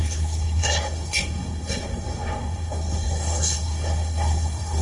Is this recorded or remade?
remade